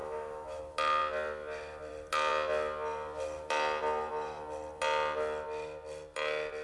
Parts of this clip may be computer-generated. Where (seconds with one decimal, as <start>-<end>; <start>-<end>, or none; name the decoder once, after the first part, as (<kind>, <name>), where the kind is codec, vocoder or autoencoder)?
0.0-0.6 (autoencoder, DAC-VAE)